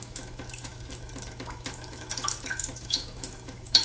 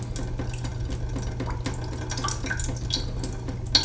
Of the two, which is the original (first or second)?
second